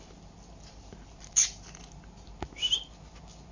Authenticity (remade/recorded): recorded